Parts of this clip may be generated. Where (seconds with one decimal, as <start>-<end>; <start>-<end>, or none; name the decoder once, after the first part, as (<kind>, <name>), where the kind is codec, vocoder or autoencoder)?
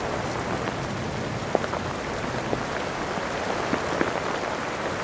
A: none